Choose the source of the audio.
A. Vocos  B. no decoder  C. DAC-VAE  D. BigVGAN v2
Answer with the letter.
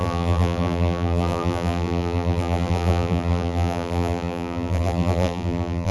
D